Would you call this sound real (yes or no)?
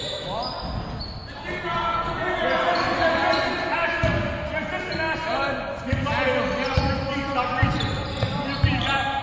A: yes